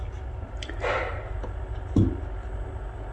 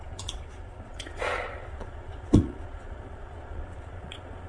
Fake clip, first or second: second